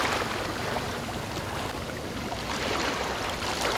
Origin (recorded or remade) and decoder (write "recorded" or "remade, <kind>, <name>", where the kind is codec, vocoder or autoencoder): remade, vocoder, BigVGAN v2